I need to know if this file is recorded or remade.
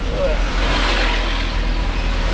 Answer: recorded